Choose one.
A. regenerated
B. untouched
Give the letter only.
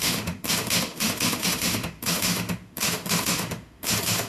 A